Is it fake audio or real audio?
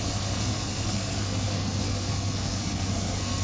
fake